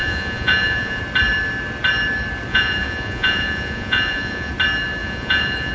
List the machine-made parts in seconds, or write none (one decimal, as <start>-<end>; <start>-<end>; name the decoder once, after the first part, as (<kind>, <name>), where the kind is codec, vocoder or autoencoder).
0.0-1.0 (vocoder, Vocos); 2.5-4.5; 5.0-5.7